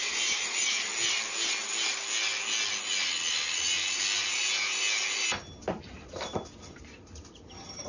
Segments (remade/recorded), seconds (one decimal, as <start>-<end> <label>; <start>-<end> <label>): 0.0-0.9 remade; 0.9-5.6 recorded; 5.6-7.9 remade